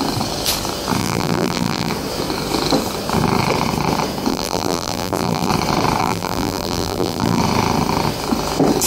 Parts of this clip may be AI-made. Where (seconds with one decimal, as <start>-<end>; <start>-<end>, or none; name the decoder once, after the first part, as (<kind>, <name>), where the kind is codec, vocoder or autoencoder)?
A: 1.0-1.9 (vocoder, BigVGAN v2); 4.3-5.5; 6.0-7.4